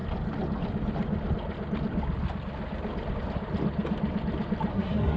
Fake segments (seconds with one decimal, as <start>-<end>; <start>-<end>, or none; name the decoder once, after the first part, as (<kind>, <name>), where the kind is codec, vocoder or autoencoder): 4.7-5.2 (codec, SNAC)